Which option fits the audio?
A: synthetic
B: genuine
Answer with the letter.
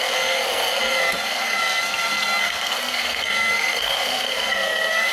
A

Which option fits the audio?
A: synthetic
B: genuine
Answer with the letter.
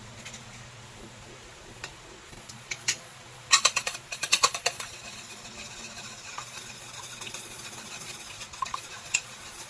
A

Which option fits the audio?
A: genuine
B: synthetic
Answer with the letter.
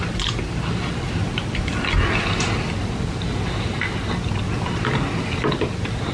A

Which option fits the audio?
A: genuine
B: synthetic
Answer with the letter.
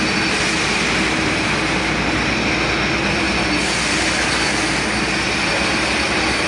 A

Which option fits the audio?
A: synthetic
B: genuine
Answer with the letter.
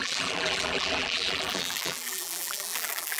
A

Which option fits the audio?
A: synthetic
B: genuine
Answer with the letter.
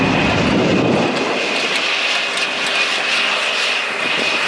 B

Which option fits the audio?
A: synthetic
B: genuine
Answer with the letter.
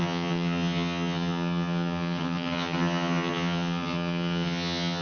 A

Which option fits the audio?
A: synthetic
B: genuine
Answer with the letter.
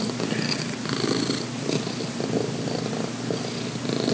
B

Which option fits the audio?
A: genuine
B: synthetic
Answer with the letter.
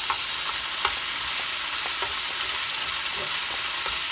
A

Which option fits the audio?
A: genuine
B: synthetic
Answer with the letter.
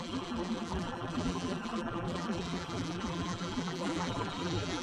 B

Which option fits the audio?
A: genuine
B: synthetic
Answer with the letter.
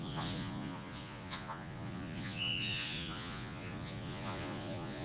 B